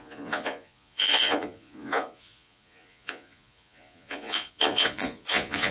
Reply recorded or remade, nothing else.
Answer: remade